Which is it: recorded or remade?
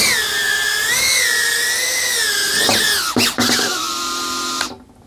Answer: recorded